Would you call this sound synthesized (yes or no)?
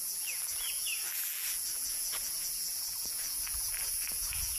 yes